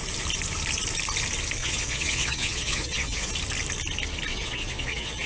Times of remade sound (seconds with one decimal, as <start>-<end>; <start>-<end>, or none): 1.6-3.3; 4.3-5.3